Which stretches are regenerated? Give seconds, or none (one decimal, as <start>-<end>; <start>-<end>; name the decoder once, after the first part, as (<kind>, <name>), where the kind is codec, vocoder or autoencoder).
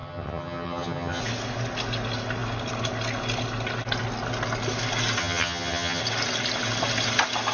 0.0-1.2 (vocoder, HiFi-GAN); 5.2-6.0